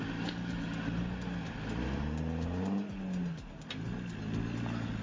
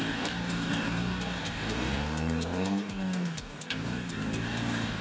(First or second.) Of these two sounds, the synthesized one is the second